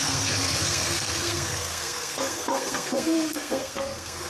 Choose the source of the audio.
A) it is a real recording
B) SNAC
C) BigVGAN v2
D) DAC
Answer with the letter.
B